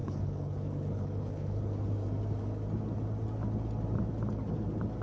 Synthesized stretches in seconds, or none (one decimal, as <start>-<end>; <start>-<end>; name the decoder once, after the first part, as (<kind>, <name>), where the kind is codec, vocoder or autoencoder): 0.0-1.7 (codec, HILCodec)